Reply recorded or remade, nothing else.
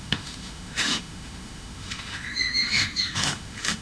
remade